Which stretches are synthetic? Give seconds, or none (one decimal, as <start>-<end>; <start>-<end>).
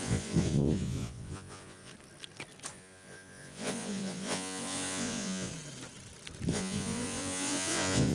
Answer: 0.0-1.9; 2.7-5.5; 6.5-8.1